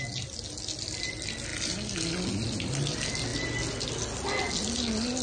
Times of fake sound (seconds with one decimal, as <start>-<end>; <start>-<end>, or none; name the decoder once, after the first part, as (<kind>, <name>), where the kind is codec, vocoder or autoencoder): none

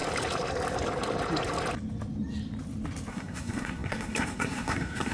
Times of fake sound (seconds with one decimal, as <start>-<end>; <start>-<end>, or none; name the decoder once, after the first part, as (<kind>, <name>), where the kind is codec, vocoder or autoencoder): 3.1-5.1 (codec, SNAC)

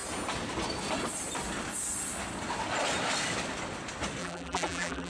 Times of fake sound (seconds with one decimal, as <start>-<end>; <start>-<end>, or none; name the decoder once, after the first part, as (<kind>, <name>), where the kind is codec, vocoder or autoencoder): 4.2-5.1 (vocoder, BigVGAN v2)

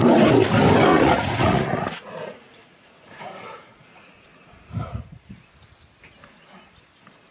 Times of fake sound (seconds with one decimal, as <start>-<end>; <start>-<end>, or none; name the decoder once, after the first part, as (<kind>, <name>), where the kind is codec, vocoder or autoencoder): 0.9-5.3 (vocoder, Vocos)

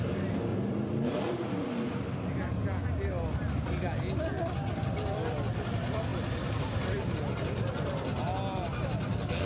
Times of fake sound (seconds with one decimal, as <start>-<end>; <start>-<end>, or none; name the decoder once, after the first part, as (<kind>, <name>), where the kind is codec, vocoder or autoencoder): 0.5-1.6 (vocoder, BigVGAN v2); 6.1-7.1

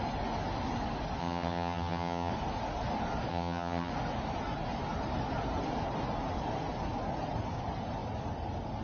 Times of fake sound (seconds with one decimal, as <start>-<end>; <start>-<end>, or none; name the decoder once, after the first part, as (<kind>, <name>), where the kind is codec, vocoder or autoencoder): 1.2-2.3 (vocoder, HiFi-GAN); 3.3-3.9

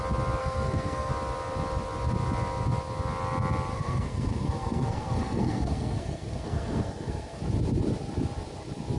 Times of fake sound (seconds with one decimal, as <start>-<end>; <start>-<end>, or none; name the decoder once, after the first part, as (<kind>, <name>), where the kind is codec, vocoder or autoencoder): 0.4-1.1 (codec, SNAC); 3.7-7.4

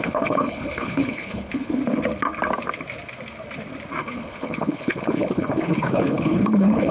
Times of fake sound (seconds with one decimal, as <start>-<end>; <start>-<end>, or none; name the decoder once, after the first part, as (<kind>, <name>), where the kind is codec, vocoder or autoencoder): 0.0-1.8 (codec, HILCodec); 4.0-6.9